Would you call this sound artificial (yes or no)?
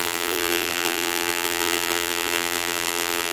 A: yes